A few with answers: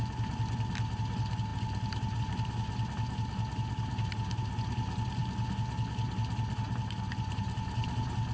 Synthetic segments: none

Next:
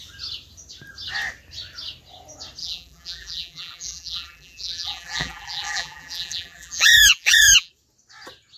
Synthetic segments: 2.6-7.7 (vocoder, BigVGAN v2)